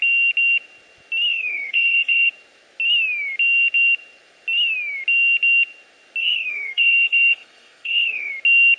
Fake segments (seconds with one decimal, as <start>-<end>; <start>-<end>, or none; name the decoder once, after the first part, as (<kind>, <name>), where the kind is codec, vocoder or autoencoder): 1.3-2.3 (codec, SNAC); 6.2-8.3